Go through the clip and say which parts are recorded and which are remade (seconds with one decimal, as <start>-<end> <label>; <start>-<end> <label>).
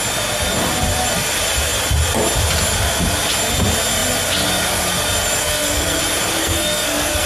0.0-5.4 recorded; 5.4-6.0 remade; 6.0-6.4 recorded; 6.4-7.3 remade